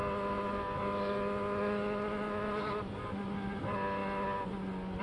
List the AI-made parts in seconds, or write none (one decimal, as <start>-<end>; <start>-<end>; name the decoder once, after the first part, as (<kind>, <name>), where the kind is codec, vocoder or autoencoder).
none